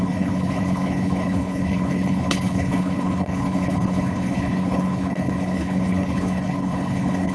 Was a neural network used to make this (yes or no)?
yes